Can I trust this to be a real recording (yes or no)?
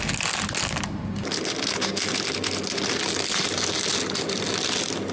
yes